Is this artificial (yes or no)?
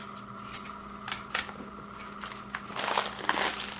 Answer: no